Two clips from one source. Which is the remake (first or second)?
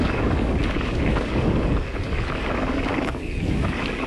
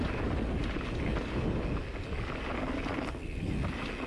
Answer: first